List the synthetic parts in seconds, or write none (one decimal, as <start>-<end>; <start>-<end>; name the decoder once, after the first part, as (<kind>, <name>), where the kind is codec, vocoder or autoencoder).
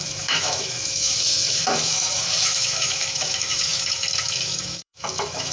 0.0-5.5 (autoencoder, DAC-VAE)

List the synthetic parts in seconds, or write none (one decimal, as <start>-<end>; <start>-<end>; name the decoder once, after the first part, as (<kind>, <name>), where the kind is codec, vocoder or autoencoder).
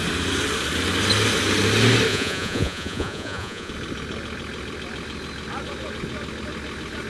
2.1-3.7 (vocoder, Vocos)